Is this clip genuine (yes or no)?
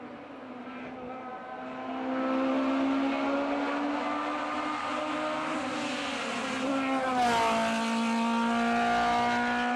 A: yes